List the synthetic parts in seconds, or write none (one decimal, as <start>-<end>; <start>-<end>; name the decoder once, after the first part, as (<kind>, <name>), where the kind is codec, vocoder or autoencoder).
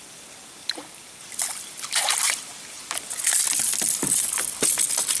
none